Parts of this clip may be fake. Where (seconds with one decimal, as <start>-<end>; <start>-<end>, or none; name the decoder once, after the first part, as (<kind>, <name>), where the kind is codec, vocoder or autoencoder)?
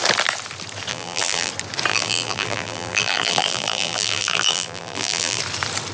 0.9-1.5 (vocoder, BigVGAN v2); 1.9-5.4